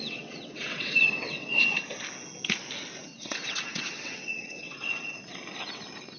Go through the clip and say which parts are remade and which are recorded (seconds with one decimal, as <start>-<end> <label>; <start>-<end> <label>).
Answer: 0.0-1.8 remade; 1.8-3.1 recorded; 3.1-5.2 remade; 5.2-6.2 recorded